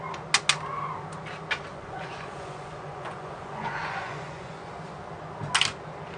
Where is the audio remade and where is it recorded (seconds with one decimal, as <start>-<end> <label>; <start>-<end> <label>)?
0.0-1.7 recorded; 1.7-4.7 remade; 4.7-6.2 recorded